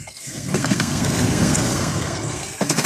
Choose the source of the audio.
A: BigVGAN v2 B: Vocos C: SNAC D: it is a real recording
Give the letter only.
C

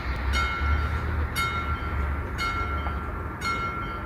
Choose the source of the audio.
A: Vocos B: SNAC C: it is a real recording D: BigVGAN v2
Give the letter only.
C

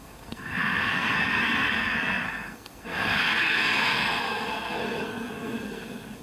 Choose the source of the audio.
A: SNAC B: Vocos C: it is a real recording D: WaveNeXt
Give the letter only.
A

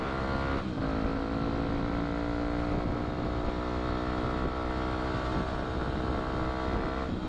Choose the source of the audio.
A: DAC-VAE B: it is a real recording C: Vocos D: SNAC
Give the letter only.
B